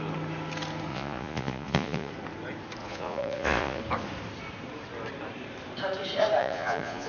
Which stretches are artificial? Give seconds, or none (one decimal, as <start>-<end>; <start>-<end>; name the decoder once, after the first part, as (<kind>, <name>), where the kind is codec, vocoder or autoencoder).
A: 0.9-2.1 (vocoder, Vocos); 2.8-3.8; 6.4-7.1